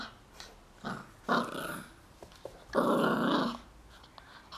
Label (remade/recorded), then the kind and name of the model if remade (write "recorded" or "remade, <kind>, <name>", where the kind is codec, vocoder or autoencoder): recorded